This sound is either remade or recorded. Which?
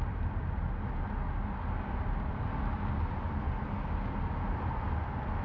recorded